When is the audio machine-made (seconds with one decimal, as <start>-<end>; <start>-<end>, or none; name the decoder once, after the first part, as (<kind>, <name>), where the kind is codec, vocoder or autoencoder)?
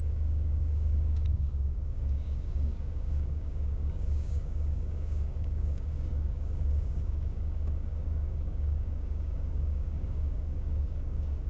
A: 0.0-11.5 (codec, DAC)